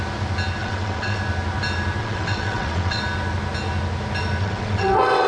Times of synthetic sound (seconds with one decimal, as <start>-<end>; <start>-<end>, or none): 0.6-1.2; 2.0-3.0; 4.4-5.3